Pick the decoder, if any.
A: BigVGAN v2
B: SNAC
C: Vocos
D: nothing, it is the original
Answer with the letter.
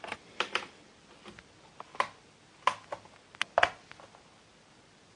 D